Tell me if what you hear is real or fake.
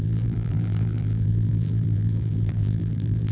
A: fake